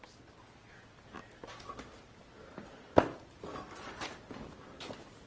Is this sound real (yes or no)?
yes